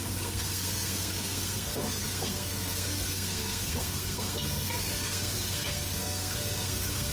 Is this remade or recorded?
remade